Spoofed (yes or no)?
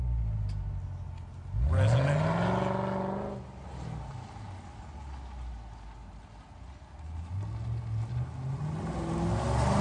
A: no